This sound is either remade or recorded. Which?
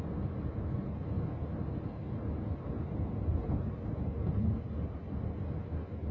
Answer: recorded